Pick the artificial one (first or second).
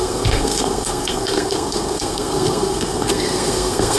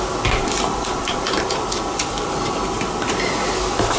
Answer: first